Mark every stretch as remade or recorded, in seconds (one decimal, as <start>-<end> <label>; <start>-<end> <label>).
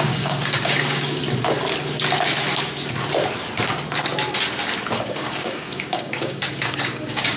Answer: 0.0-1.2 remade; 1.2-4.9 recorded; 4.9-7.4 remade